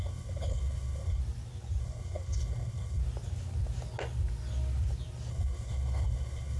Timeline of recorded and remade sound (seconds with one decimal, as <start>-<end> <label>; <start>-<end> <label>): 0.0-1.2 remade; 1.2-1.8 recorded; 1.8-3.0 remade; 3.0-5.3 recorded; 5.3-6.6 remade